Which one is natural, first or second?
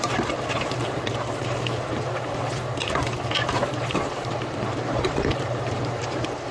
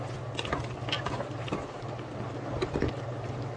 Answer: second